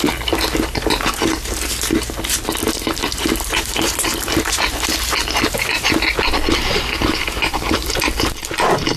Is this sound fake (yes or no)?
no